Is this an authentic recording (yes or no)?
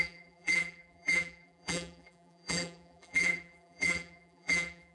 no